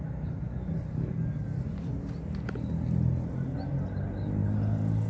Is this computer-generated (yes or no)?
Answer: no